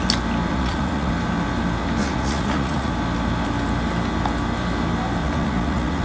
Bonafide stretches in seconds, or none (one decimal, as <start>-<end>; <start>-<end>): 0.0-0.5; 1.1-2.0; 2.9-5.2